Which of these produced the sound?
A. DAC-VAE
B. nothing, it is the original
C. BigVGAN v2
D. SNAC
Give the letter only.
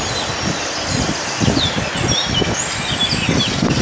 B